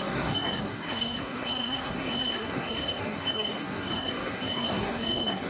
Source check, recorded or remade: remade